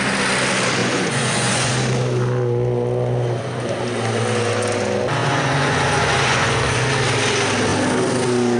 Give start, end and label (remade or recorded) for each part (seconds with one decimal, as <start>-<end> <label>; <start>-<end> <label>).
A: 0.0-0.8 recorded; 0.8-1.7 remade; 1.7-5.2 recorded; 5.2-6.9 remade; 6.9-8.6 recorded